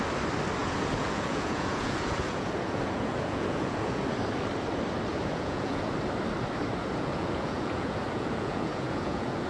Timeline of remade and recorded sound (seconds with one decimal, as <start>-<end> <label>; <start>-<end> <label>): 0.0-0.6 recorded; 0.6-4.0 remade; 4.0-5.1 recorded; 5.1-5.9 remade; 5.9-6.8 recorded; 6.8-9.5 remade